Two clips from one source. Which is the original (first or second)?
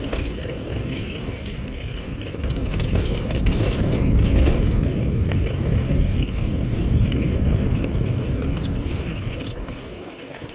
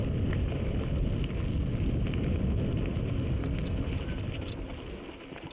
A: second